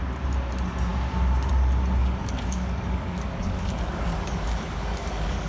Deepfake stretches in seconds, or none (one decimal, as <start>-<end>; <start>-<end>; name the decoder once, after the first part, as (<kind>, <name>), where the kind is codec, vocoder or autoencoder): 2.0-5.5 (codec, DAC)